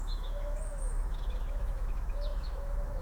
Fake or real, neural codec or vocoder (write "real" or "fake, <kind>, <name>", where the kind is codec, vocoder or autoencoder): fake, autoencoder, DAC-VAE